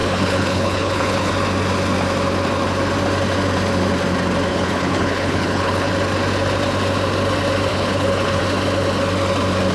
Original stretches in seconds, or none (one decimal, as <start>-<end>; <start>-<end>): 1.3-4.5; 5.9-7.7; 8.4-9.7

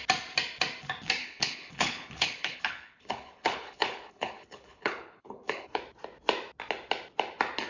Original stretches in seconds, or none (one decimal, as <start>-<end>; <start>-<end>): 0.0-1.2; 5.8-7.7

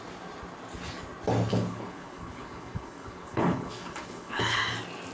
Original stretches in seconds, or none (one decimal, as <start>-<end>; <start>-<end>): 0.0-1.5; 4.6-5.1

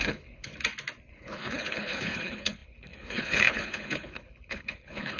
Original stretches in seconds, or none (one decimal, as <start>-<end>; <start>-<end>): 0.5-1.1